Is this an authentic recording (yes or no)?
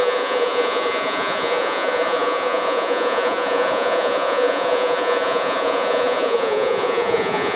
no